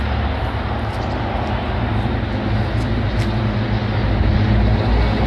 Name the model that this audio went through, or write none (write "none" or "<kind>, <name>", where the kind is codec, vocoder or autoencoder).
none